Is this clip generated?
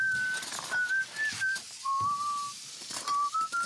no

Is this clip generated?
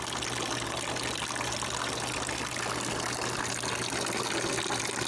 no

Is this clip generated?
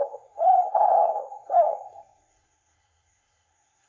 yes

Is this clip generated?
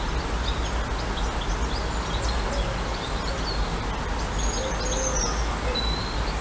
no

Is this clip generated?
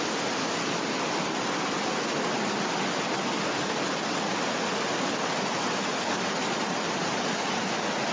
no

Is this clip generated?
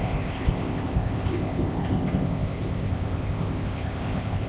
yes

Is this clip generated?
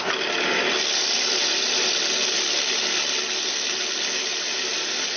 no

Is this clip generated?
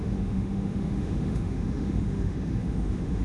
yes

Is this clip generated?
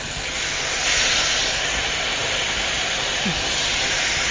no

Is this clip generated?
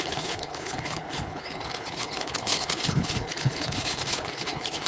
yes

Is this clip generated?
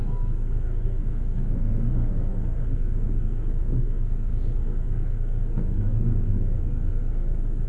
yes